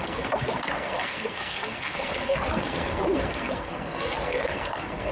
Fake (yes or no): yes